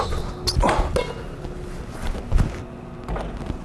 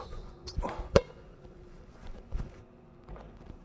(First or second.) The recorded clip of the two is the first